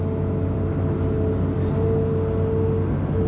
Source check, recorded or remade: recorded